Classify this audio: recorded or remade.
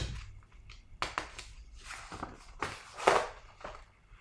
recorded